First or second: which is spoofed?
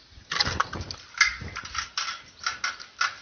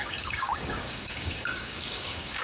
second